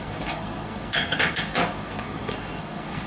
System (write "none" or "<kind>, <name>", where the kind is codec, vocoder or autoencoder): codec, SNAC